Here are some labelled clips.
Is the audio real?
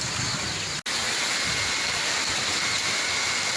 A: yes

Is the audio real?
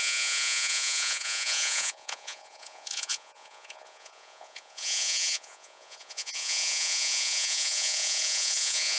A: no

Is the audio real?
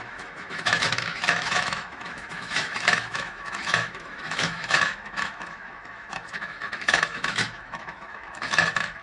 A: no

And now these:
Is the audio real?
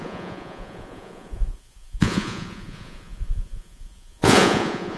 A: no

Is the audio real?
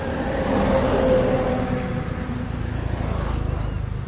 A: yes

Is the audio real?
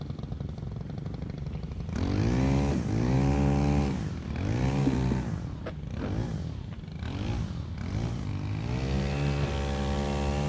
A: yes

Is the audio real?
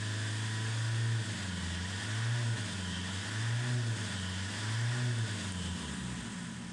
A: yes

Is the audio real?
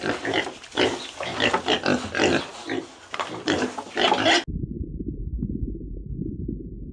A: yes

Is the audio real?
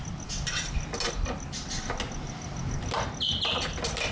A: yes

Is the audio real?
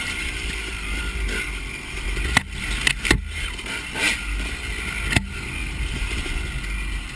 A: yes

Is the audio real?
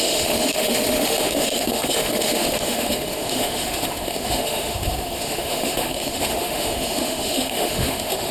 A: no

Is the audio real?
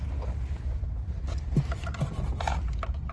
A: yes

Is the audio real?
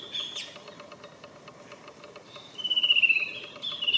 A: yes